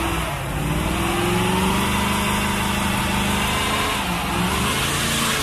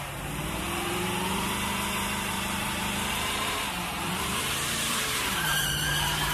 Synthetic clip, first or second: second